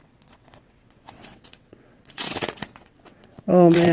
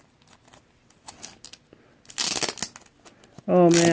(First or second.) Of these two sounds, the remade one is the first